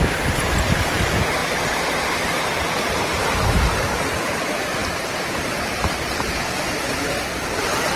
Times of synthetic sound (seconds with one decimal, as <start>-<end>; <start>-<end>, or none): 1.4-2.0; 4.8-6.9